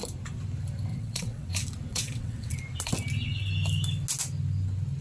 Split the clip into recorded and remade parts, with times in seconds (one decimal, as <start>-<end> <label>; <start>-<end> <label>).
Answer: 0.0-0.9 recorded; 0.9-1.5 remade; 1.5-1.9 recorded; 1.9-2.5 remade; 2.5-5.0 recorded